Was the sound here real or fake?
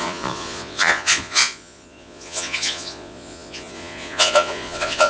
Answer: fake